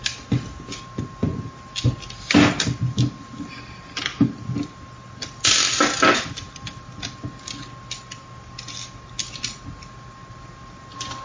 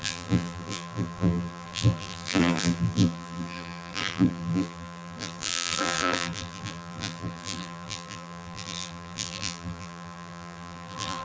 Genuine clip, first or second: first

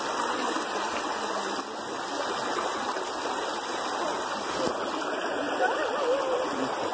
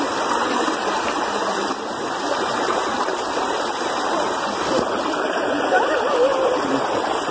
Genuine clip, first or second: first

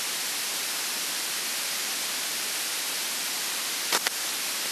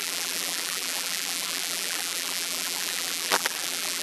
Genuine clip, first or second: first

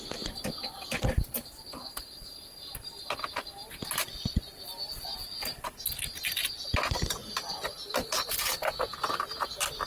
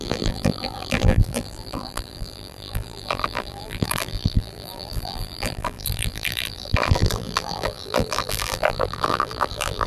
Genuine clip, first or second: first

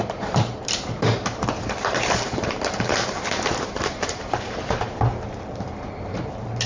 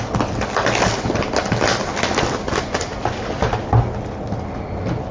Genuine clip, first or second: second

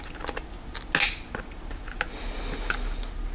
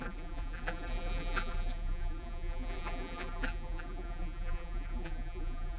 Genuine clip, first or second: first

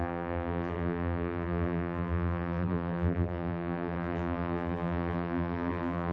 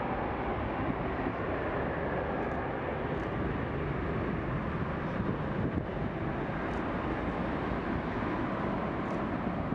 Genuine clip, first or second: second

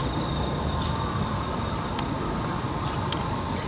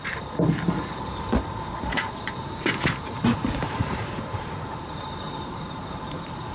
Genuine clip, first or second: first